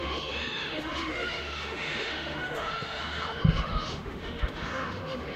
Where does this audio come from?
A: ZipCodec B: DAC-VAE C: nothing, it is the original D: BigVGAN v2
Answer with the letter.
B